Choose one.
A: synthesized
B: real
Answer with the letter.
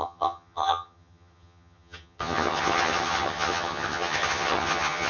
A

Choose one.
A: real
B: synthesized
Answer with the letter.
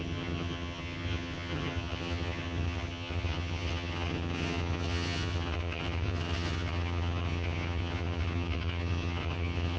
B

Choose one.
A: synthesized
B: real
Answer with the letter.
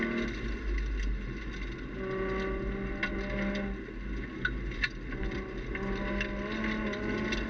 B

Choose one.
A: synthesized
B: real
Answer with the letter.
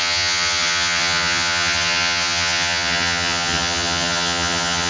A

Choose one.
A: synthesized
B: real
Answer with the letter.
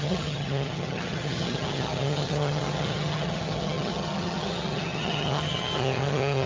A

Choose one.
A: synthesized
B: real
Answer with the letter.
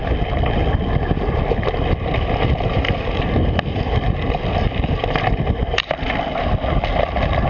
B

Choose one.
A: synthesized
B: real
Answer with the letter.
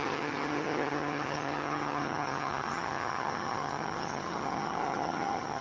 A